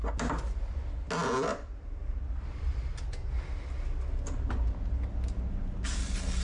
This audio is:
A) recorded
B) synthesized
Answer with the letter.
A